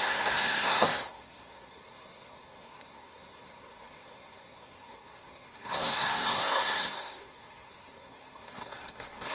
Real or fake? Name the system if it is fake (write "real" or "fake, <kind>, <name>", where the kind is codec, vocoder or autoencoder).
fake, codec, SNAC